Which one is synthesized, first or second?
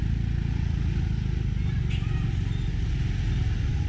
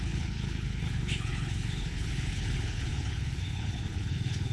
second